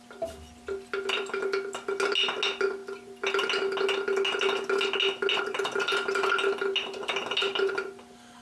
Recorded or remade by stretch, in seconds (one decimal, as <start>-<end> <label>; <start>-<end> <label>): 0.0-8.4 recorded

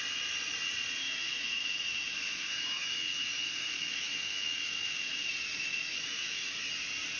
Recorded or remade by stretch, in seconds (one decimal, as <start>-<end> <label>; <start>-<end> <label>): 0.0-1.0 recorded; 1.0-5.3 remade; 5.3-5.7 recorded; 5.7-6.7 remade; 6.7-7.2 recorded

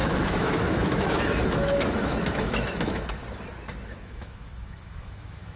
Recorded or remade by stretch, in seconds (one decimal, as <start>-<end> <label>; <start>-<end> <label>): 0.0-3.2 remade; 3.2-4.0 recorded; 4.0-5.6 remade

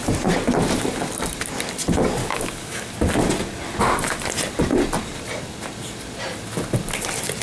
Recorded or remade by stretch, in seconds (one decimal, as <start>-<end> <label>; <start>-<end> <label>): 0.0-2.2 recorded; 2.2-2.9 remade; 2.9-7.4 recorded